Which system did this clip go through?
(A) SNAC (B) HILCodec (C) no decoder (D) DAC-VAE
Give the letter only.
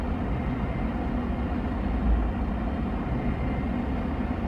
C